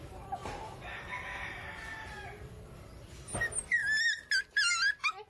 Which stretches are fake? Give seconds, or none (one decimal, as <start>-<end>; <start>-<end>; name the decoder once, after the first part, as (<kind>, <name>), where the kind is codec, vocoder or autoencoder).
none